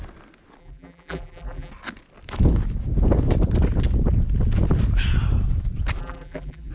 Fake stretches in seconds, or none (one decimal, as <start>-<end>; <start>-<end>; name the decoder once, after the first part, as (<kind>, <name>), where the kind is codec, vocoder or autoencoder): 0.6-1.7 (vocoder, BigVGAN v2); 6.0-6.7